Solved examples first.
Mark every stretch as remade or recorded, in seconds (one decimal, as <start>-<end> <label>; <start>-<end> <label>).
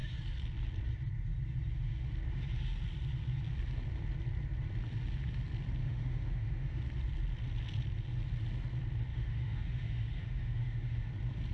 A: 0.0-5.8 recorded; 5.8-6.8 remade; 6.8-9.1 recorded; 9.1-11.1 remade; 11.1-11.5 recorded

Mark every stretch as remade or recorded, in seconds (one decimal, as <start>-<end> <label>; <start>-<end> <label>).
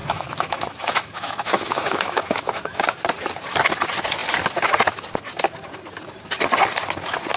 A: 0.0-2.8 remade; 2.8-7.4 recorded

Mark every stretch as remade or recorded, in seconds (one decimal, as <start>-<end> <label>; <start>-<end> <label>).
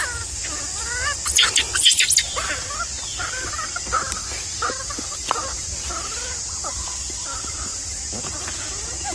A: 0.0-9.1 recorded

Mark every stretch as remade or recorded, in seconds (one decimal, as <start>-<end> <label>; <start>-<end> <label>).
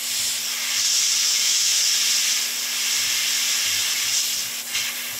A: 0.0-1.2 recorded; 1.2-1.9 remade; 1.9-5.2 recorded